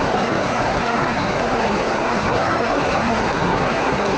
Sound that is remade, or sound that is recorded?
remade